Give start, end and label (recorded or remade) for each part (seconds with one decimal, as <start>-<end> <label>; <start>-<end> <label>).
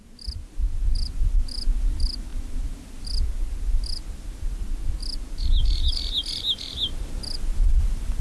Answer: 0.0-8.2 recorded